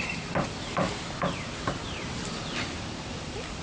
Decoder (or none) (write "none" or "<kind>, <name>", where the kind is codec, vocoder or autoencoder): none